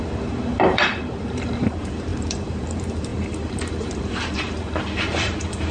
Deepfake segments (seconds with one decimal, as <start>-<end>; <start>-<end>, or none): 0.0-5.7